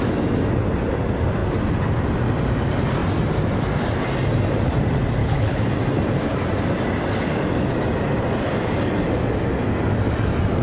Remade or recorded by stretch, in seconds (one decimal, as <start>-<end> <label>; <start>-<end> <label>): 0.0-5.2 recorded; 5.2-5.7 remade; 5.7-10.6 recorded